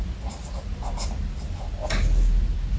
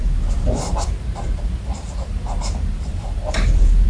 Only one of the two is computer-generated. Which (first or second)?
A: second